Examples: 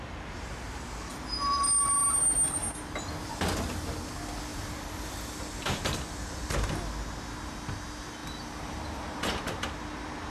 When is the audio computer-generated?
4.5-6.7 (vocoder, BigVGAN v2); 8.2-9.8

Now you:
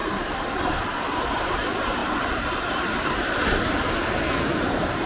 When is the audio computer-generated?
0.0-2.0 (vocoder, BigVGAN v2); 2.8-5.1

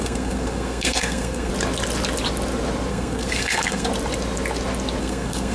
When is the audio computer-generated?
0.0-1.5 (codec, SNAC); 2.9-3.9; 5.0-5.5

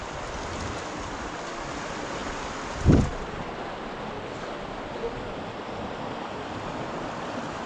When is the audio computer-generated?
none